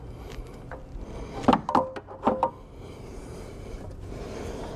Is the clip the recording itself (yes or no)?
yes